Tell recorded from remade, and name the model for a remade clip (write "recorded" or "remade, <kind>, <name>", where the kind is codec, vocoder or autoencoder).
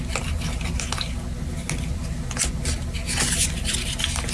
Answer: recorded